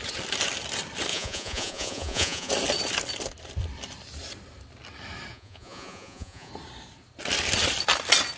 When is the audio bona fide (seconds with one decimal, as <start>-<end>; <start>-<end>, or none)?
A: 0.0-1.1; 2.5-5.3; 6.5-8.4